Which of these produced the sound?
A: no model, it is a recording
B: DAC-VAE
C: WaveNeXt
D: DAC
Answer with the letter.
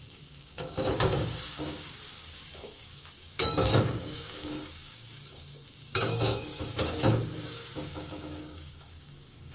D